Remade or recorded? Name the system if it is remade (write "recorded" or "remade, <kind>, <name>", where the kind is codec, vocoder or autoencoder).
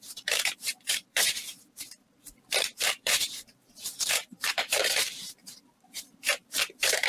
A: remade, vocoder, BigVGAN v2